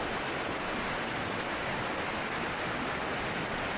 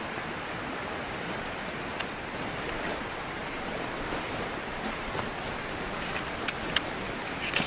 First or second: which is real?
first